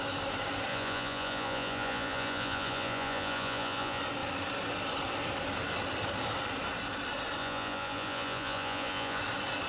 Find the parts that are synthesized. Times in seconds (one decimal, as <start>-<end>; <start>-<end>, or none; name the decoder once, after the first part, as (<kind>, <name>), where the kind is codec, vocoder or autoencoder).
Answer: 0.7-4.0 (vocoder, Vocos); 7.4-9.2